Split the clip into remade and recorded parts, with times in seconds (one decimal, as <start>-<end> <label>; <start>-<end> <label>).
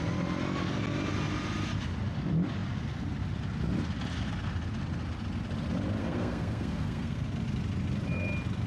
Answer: 0.0-6.0 recorded; 6.0-7.2 remade; 7.2-8.7 recorded